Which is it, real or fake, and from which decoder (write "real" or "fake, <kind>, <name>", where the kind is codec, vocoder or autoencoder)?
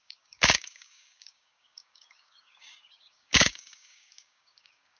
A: fake, codec, DAC